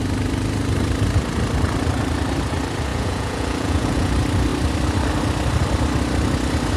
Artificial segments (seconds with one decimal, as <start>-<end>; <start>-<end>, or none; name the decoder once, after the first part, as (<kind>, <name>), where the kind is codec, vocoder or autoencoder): 2.9-4.1 (vocoder, Vocos)

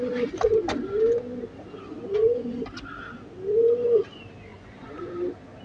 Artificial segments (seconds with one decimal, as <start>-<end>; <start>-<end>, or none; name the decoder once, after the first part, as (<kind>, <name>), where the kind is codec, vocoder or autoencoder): 2.1-2.6 (vocoder, Vocos); 4.5-5.1

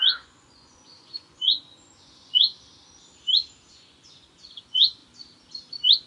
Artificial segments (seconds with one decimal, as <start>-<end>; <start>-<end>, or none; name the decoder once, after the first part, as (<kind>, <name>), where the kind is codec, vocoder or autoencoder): 0.0-2.5 (vocoder, Vocos); 3.7-5.0

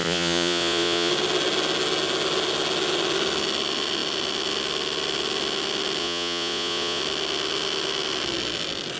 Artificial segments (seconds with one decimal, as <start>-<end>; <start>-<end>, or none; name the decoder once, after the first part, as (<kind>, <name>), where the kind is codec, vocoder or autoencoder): 0.0-1.1 (vocoder, Vocos); 6.0-7.0